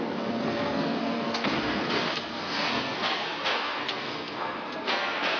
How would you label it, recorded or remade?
remade